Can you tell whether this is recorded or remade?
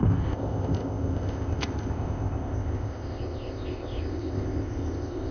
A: remade